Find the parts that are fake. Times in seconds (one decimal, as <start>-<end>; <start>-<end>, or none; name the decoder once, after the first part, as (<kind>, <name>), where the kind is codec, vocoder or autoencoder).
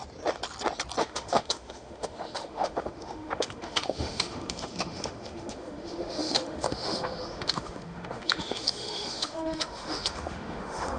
1.0-11.0 (autoencoder, DAC-VAE)